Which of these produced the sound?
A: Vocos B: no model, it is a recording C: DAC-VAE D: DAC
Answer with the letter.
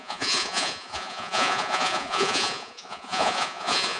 A